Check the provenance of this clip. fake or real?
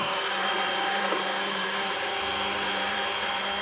fake